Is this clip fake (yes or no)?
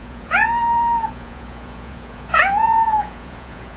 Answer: yes